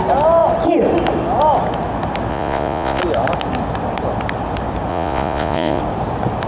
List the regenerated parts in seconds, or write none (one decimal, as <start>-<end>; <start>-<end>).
2.3-3.0; 4.9-5.8